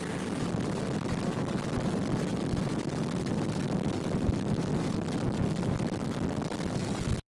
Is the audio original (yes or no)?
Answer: yes